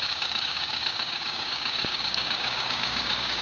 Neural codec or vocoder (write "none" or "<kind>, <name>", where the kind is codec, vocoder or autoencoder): codec, DAC